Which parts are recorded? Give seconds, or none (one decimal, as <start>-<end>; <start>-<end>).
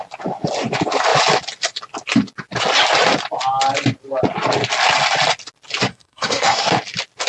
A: 0.0-5.9; 6.7-7.3